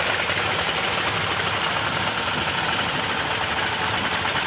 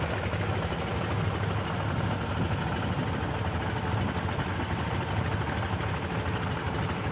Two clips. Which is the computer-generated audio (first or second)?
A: first